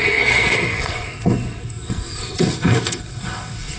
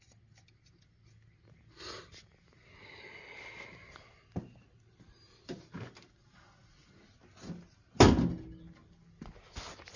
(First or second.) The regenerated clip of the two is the first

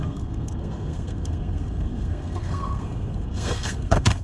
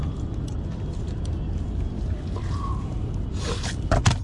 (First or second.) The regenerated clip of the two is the first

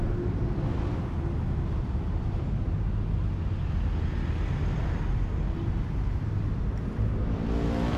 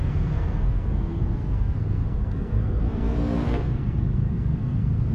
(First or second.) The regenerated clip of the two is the second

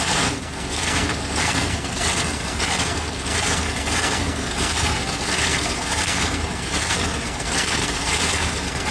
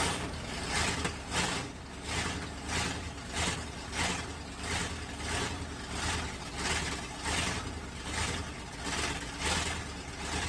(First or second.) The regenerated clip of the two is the first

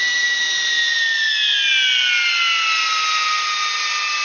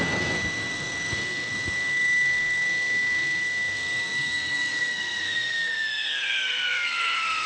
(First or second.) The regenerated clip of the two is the second